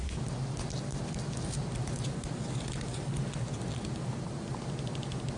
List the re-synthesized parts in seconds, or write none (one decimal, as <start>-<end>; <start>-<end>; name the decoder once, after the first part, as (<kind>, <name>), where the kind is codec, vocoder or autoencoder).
none